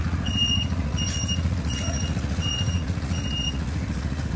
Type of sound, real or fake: fake